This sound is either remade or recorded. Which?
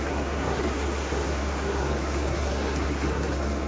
remade